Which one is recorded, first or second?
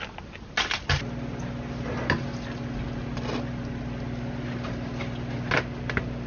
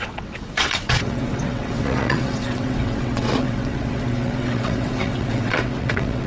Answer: first